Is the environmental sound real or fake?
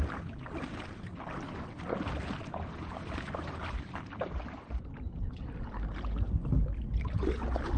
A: real